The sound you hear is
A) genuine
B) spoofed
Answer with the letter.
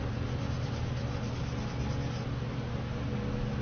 A